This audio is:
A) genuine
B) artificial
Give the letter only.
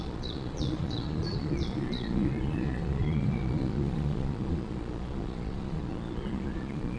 B